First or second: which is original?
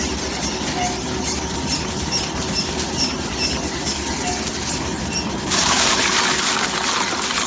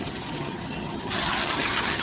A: first